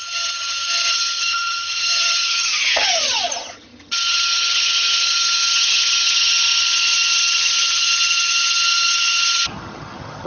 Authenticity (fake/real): fake